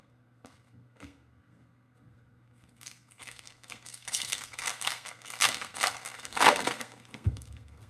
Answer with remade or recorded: remade